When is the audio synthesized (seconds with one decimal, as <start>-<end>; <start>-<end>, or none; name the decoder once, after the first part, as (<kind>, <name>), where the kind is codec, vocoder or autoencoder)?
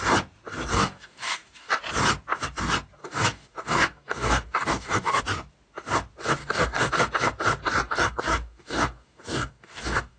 0.7-1.8 (codec, DAC); 3.0-5.2; 6.4-6.9; 7.6-10.2